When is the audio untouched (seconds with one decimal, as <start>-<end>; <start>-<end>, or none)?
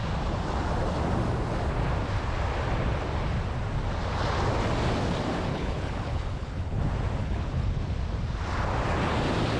0.0-5.5; 6.8-7.2; 7.8-9.6